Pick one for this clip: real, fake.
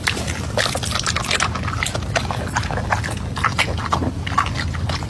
real